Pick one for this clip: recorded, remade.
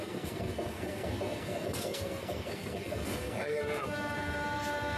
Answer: remade